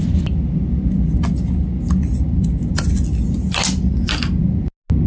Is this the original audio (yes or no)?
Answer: yes